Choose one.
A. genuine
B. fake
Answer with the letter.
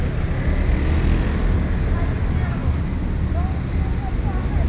A